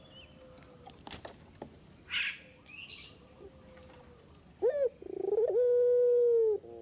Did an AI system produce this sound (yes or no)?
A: no